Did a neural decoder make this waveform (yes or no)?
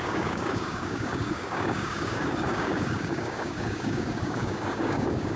yes